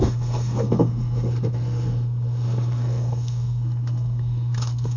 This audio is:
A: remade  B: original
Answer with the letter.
A